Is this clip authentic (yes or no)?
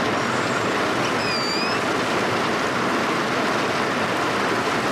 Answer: yes